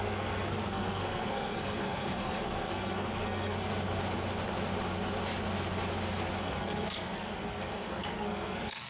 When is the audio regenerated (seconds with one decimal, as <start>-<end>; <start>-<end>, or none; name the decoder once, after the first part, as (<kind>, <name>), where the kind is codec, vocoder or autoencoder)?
0.0-3.7 (codec, SNAC); 6.4-8.9